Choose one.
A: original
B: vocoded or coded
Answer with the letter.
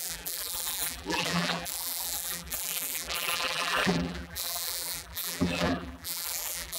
B